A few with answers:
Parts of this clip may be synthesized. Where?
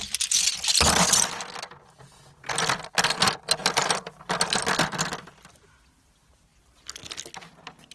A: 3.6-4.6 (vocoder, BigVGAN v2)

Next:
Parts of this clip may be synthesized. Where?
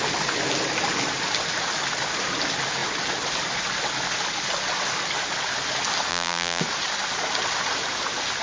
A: 6.1-6.6 (vocoder, BigVGAN v2)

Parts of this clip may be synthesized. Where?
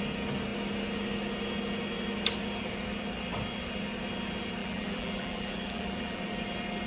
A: 4.6-6.2 (vocoder, BigVGAN v2)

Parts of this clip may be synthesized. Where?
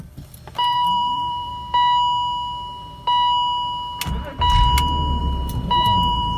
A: 0.0-1.5 (vocoder, BigVGAN v2); 5.2-6.4